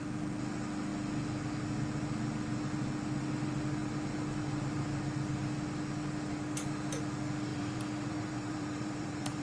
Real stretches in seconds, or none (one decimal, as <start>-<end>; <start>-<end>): 0.0-7.5